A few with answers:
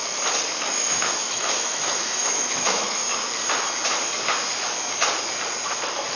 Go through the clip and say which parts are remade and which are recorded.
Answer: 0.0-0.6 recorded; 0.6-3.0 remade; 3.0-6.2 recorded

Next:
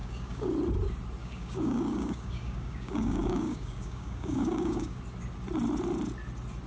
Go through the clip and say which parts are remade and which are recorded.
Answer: 0.0-0.5 remade; 0.5-1.2 recorded; 1.2-5.0 remade; 5.0-6.7 recorded

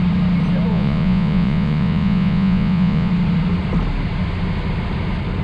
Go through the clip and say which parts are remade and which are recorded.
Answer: 0.0-0.7 recorded; 0.7-3.1 remade; 3.1-5.4 recorded

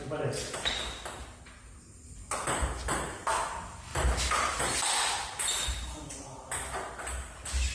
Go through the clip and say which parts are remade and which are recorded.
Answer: 0.0-7.7 recorded

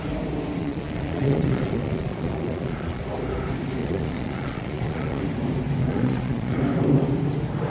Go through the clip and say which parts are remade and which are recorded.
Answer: 0.0-0.6 recorded; 0.6-3.0 remade; 3.0-3.8 recorded; 3.8-5.2 remade; 5.2-5.8 recorded; 5.8-6.6 remade; 6.6-7.7 recorded